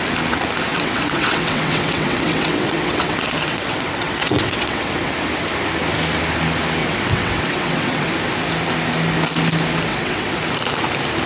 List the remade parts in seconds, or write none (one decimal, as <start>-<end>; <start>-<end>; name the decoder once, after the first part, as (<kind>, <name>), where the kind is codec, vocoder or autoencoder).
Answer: 0.7-5.1 (vocoder, WaveNeXt); 6.8-8.1; 9.9-10.4